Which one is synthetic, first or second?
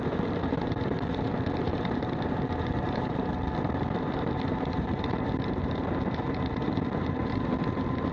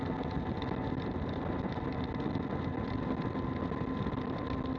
first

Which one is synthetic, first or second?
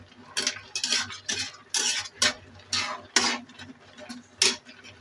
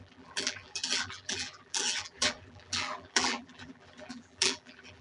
second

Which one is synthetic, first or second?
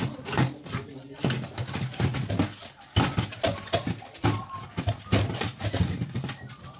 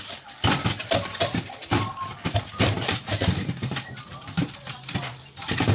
second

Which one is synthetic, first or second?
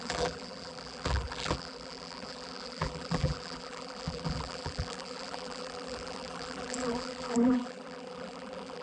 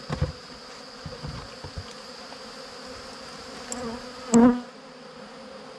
first